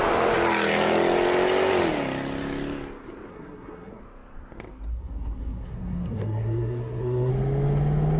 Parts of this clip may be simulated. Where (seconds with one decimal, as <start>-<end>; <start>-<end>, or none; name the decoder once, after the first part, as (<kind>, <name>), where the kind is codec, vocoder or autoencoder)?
3.3-4.0 (codec, SNAC); 4.9-7.3